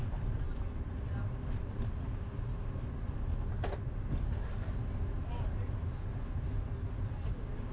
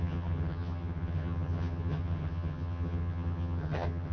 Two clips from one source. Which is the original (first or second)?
first